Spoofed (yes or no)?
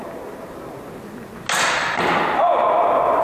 no